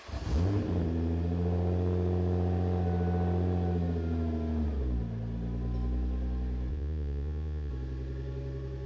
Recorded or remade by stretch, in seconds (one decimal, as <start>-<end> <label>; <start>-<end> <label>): 0.0-6.7 recorded; 6.7-7.7 remade; 7.7-8.9 recorded